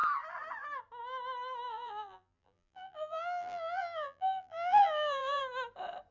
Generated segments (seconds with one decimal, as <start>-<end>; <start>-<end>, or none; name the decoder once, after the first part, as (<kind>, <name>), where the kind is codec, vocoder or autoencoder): 1.7-5.4 (vocoder, BigVGAN v2)